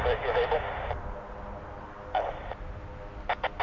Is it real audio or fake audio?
real